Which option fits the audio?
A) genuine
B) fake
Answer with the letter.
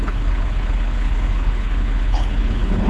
B